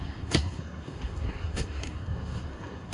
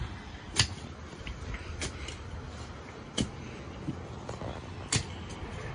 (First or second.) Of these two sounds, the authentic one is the second